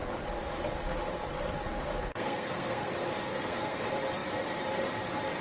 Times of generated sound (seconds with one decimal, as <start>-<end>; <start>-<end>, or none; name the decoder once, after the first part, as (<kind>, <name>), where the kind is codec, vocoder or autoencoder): 2.1-2.9 (codec, SNAC); 3.3-3.8